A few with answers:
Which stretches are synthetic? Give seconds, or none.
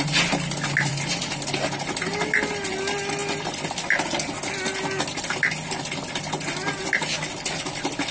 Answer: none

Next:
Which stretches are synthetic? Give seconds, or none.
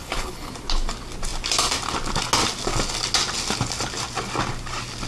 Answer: 0.0-0.5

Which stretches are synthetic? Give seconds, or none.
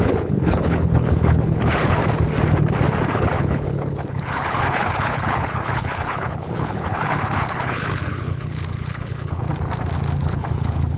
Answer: 0.0-2.0; 3.1-9.5; 10.2-11.0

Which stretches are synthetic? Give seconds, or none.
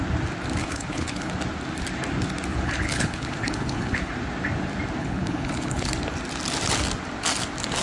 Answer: 0.6-1.3; 2.5-4.1; 5.0-5.9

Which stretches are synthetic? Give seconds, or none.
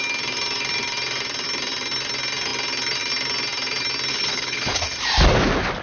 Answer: 4.1-4.8